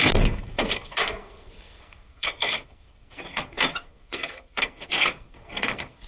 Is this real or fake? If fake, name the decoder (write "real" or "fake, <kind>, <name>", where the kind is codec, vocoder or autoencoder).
fake, codec, SNAC